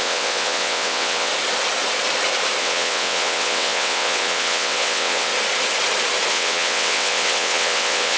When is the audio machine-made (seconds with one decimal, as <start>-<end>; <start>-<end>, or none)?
0.0-1.3; 2.6-5.3; 6.3-8.2